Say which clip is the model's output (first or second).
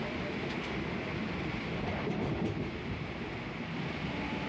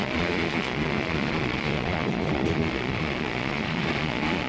second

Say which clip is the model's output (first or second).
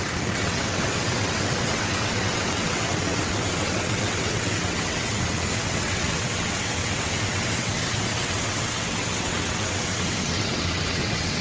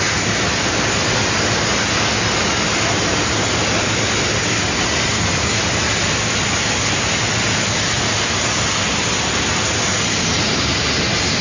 first